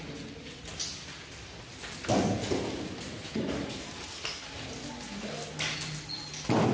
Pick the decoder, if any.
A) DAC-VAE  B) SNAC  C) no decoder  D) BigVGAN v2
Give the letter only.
C